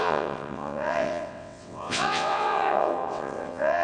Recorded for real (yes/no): no